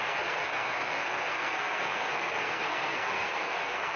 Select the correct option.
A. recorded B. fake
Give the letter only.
B